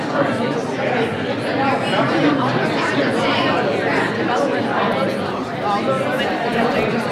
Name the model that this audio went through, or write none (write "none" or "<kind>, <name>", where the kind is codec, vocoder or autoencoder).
none